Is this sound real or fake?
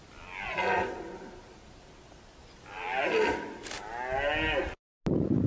real